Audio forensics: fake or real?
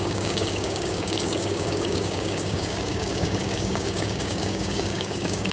fake